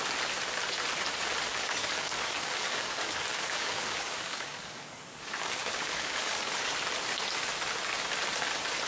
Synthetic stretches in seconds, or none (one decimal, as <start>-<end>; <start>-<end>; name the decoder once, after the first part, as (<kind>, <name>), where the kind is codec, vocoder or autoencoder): 1.5-6.7 (codec, DAC)